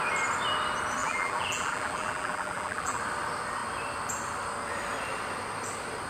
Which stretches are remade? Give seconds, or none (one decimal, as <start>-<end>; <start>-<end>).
1.0-3.0